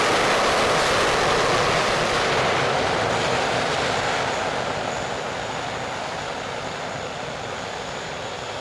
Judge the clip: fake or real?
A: real